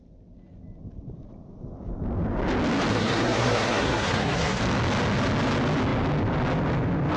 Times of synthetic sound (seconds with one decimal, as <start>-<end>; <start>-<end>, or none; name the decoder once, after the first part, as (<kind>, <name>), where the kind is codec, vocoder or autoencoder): 2.9-4.6 (codec, SNAC)